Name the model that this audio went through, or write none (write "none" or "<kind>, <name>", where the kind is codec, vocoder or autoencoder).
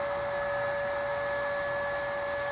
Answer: none